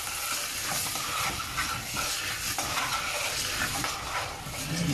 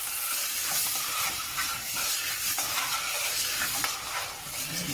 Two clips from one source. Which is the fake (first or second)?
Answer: second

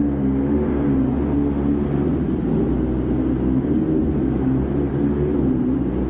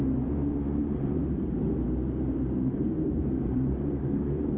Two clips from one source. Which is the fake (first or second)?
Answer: second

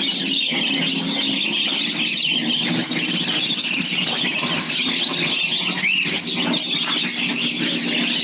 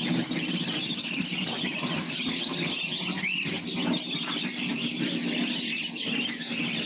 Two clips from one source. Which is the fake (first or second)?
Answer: second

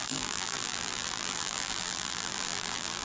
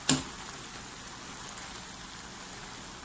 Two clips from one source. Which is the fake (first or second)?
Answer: first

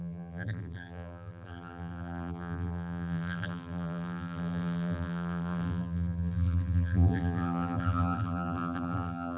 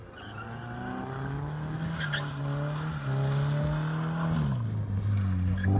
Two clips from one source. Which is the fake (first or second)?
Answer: first